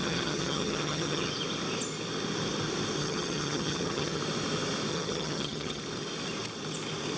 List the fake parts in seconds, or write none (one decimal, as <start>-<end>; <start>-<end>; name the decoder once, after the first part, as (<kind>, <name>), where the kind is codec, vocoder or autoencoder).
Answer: 0.0-1.3 (vocoder, HiFi-GAN); 3.0-4.2; 4.9-5.8